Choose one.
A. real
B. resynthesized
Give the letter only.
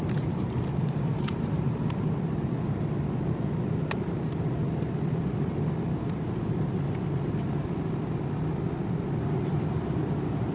A